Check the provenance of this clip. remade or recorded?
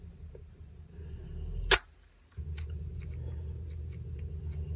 recorded